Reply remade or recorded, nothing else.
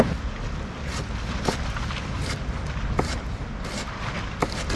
recorded